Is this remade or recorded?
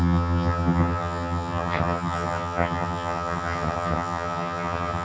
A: remade